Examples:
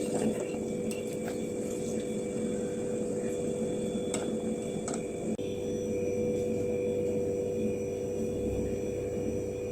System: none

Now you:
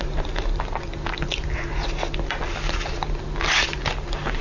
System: none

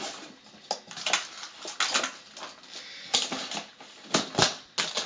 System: none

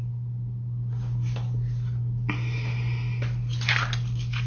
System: none